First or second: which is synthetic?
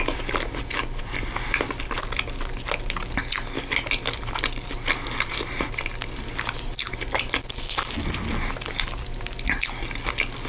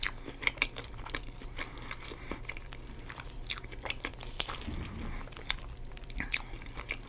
second